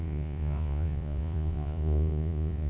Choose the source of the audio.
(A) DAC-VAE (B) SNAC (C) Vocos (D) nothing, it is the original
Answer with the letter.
C